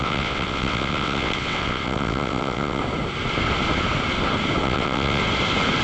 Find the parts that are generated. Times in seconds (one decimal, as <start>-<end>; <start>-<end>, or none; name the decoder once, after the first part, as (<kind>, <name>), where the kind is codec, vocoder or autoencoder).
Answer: 0.0-2.8 (vocoder, WaveNeXt); 4.6-5.2